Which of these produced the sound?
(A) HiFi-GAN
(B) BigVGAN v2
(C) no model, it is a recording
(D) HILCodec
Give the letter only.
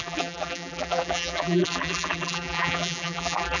B